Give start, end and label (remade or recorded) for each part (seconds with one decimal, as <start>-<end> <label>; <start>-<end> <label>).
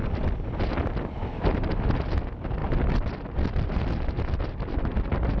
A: 0.0-2.6 recorded; 2.6-4.2 remade; 4.2-5.4 recorded